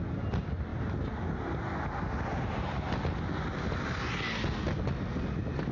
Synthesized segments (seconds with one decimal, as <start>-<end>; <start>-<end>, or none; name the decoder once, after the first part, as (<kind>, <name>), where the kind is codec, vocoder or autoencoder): none